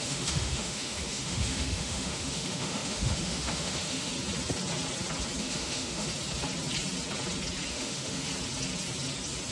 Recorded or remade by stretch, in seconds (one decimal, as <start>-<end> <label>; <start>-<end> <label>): 0.0-4.1 remade; 4.1-5.4 recorded; 5.4-6.1 remade; 6.1-7.7 recorded; 7.7-8.3 remade; 8.3-9.5 recorded